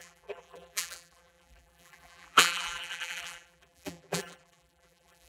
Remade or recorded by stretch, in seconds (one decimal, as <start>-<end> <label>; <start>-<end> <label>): 0.0-5.3 remade